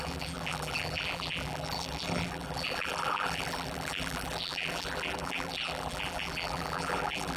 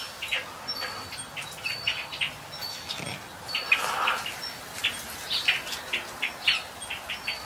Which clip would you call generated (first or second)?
first